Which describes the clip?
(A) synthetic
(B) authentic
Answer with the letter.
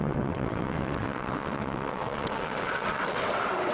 A